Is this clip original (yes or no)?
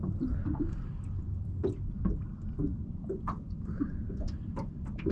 no